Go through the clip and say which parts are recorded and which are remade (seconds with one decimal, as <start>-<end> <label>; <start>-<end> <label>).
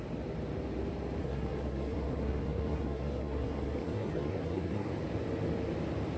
0.0-1.2 recorded; 1.2-4.9 remade; 4.9-6.2 recorded